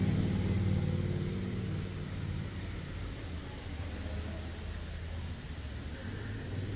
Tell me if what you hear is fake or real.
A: real